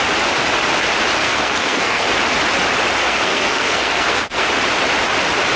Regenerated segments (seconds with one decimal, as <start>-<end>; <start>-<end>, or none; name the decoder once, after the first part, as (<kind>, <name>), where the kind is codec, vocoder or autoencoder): 1.2-2.1 (codec, SNAC); 3.0-4.5